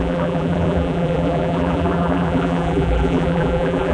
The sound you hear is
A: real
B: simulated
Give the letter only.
B